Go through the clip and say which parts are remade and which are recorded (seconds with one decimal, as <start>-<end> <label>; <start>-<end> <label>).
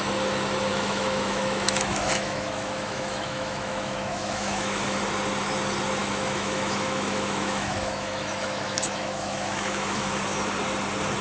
0.0-0.7 recorded; 0.7-5.0 remade; 5.0-6.0 recorded; 6.0-10.2 remade; 10.2-11.2 recorded